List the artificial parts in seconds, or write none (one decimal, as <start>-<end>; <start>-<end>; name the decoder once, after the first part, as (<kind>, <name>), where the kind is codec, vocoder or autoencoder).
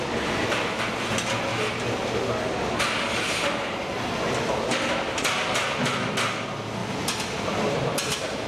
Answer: none